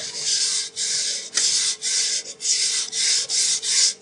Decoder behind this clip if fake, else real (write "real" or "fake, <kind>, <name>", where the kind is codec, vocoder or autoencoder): fake, vocoder, Vocos